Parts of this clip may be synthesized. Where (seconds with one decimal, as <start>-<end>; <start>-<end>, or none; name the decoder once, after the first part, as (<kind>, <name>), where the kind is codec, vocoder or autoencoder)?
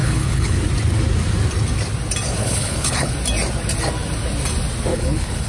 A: 0.0-0.6 (codec, HILCodec); 2.4-3.1; 4.9-5.5